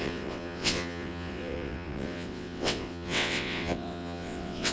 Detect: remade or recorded remade